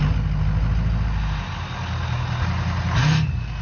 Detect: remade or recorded recorded